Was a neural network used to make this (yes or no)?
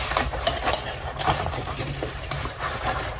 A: yes